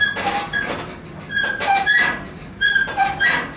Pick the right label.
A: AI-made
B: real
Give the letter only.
A